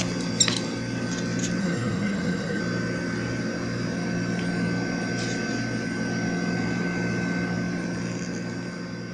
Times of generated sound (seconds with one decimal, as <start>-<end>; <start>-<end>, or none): 1.6-2.6